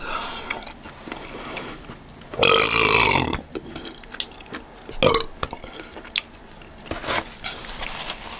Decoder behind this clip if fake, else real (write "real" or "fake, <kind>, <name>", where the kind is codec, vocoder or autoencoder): real